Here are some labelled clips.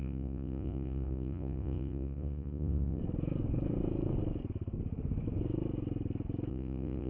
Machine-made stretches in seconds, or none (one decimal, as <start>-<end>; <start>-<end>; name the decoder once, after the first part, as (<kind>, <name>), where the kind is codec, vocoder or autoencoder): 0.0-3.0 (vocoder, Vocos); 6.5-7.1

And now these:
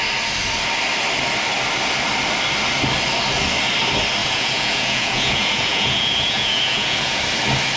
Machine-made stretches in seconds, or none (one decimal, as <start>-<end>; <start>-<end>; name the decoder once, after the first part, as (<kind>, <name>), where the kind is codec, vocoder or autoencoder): 4.2-7.2 (vocoder, Vocos)

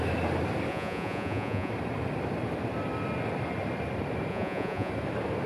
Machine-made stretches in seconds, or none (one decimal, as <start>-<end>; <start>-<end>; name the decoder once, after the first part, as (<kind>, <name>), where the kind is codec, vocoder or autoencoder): 0.7-1.7 (vocoder, Vocos); 4.3-4.9

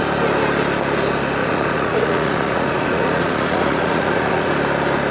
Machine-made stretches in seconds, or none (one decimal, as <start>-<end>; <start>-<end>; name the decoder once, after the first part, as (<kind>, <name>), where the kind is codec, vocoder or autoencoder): 1.4-4.5 (vocoder, Vocos)

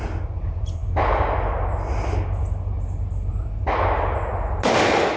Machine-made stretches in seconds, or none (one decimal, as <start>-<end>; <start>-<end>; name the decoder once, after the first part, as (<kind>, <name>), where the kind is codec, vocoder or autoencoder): none

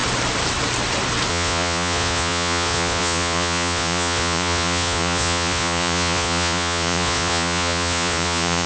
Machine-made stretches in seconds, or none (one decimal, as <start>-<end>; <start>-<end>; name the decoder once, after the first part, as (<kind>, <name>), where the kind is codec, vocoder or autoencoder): 1.3-8.7 (vocoder, Vocos)